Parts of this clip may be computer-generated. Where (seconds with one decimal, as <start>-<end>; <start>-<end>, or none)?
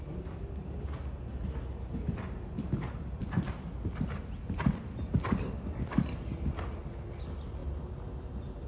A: none